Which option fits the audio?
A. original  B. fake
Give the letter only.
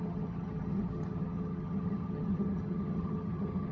B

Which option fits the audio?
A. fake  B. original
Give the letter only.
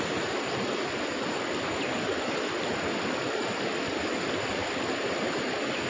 B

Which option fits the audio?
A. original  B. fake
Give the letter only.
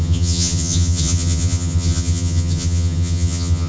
B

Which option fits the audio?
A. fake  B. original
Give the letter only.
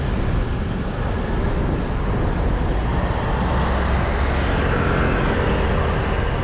B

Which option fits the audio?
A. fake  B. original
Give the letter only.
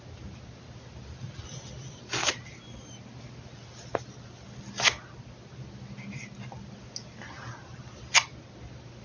B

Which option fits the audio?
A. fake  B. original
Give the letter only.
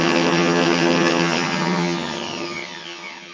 A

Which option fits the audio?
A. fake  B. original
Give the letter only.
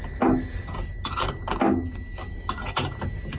B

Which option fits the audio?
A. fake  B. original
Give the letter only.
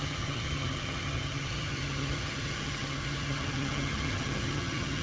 A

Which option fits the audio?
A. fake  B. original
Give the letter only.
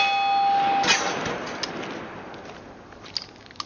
B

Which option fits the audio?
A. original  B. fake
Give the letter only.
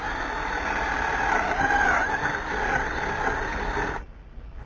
A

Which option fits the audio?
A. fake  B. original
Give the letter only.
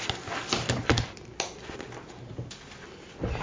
B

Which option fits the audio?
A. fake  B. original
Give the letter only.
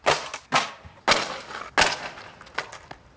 B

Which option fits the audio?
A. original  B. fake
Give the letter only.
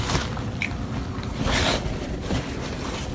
A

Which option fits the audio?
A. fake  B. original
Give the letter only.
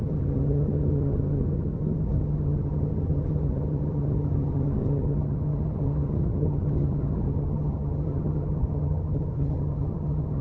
A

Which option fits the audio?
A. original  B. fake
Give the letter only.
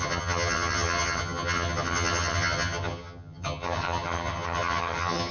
B